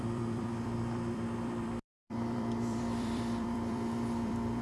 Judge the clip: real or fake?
fake